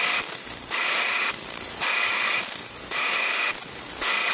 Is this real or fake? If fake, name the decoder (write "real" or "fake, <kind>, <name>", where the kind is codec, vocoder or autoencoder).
real